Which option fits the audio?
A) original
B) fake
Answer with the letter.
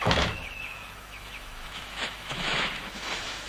B